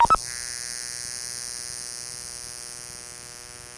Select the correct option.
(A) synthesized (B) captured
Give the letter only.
B